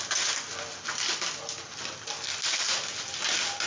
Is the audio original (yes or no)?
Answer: yes